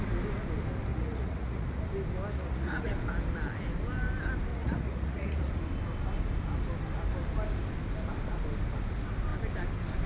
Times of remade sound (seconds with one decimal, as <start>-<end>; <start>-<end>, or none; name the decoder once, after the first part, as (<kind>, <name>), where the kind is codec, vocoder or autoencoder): 0.9-1.8 (vocoder, Vocos); 2.3-2.9; 4.5-5.5